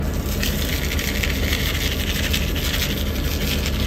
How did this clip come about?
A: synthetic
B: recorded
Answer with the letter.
B